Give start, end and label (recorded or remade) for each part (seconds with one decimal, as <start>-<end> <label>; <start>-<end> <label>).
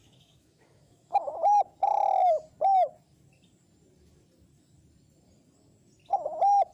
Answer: 0.0-1.5 remade; 1.5-6.7 recorded